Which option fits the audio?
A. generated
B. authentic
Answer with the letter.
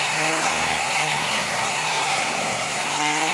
A